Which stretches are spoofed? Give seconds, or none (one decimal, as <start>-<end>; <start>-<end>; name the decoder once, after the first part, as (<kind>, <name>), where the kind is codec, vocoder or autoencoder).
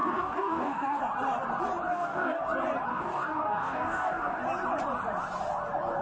0.0-1.0 (codec, DAC); 1.9-2.4; 2.9-4.4